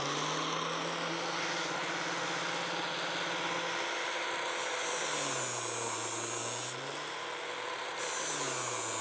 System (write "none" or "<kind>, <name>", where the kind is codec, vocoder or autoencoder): none